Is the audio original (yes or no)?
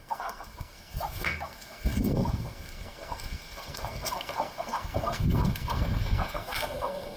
no